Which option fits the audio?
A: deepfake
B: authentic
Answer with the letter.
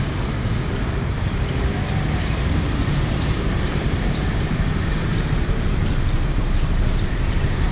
A